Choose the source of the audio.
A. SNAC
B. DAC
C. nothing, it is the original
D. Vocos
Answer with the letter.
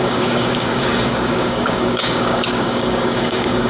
B